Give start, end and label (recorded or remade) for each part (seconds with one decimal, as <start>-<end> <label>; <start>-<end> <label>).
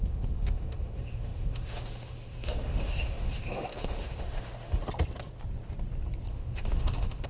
0.0-4.8 remade; 4.8-6.3 recorded; 6.3-7.3 remade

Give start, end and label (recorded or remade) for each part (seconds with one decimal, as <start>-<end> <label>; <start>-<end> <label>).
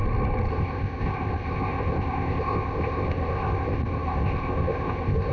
0.0-0.5 recorded; 0.5-5.3 remade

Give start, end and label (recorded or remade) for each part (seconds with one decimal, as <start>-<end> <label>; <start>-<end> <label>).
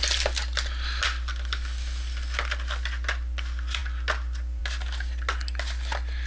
0.0-6.3 recorded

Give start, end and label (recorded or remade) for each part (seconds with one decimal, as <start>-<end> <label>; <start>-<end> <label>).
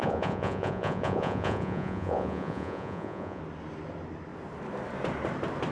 0.0-3.4 remade; 3.4-5.7 recorded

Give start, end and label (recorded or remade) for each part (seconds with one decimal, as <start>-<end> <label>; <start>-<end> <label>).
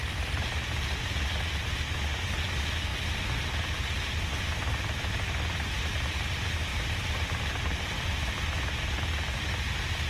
0.0-6.7 recorded; 6.7-8.1 remade; 8.1-10.1 recorded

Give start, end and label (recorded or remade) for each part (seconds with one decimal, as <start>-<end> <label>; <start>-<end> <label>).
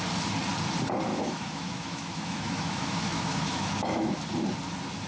0.0-1.1 recorded; 1.1-4.2 remade; 4.2-5.1 recorded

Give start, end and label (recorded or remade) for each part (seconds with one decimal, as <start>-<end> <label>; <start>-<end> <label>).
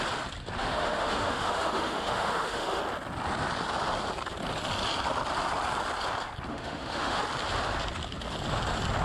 0.0-0.6 recorded; 0.6-2.8 remade; 2.8-6.5 recorded; 6.5-7.2 remade; 7.2-9.0 recorded